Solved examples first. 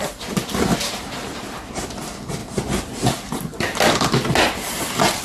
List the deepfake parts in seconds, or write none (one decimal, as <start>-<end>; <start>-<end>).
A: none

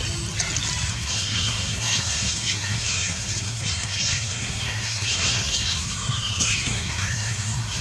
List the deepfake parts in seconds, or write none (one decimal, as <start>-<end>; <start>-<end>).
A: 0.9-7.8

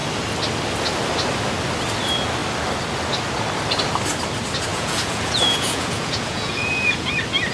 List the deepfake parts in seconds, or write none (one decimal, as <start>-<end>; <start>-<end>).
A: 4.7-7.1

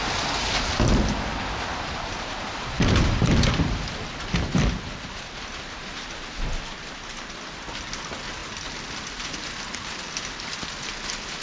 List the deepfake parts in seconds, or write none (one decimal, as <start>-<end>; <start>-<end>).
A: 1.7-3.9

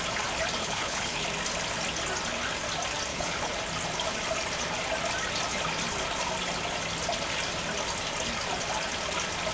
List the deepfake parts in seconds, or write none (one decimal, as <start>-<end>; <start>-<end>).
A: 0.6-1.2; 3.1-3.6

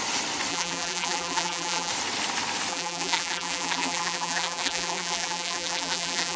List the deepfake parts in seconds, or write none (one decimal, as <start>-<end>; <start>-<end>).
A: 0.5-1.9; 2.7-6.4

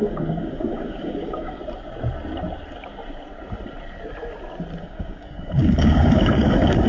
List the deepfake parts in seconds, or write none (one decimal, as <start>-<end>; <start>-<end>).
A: 0.0-1.6; 4.8-6.9

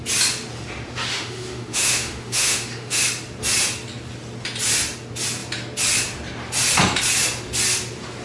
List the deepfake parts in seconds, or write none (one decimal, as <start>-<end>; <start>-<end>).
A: 1.1-3.0